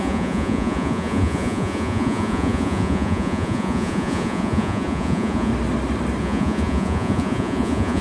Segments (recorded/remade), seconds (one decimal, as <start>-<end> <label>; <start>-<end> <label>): 0.0-5.5 remade; 5.5-6.2 recorded; 6.2-8.0 remade